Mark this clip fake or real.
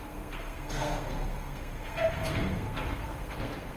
fake